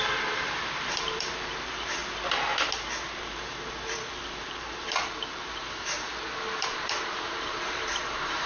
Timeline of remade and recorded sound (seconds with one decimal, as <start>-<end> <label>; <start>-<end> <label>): 0.0-2.0 remade; 2.0-3.0 recorded; 3.0-6.1 remade; 6.1-6.6 recorded; 6.6-8.5 remade